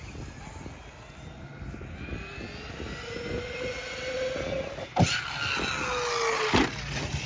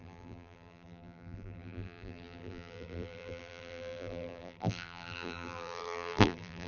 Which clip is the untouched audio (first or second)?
first